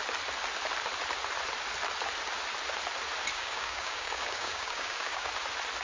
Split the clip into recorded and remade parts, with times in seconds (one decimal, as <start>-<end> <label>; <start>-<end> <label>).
0.0-3.3 recorded; 3.3-5.3 remade; 5.3-5.8 recorded